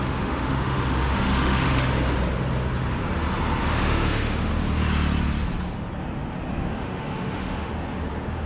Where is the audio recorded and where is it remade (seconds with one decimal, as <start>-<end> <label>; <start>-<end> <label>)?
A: 0.0-1.9 remade; 1.9-3.6 recorded; 3.6-4.5 remade; 4.5-6.5 recorded; 6.5-7.7 remade; 7.7-8.5 recorded